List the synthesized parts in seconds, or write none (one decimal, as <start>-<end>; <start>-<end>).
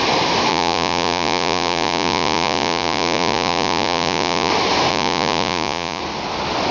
0.5-4.5; 4.9-6.0